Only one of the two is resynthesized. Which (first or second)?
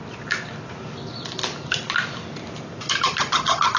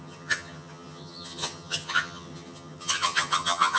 second